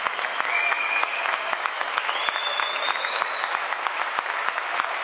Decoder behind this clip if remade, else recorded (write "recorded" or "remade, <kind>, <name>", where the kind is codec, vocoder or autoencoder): remade, autoencoder, DAC-VAE